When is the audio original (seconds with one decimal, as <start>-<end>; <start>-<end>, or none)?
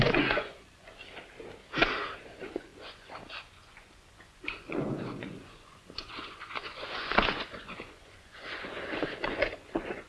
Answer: 1.0-2.2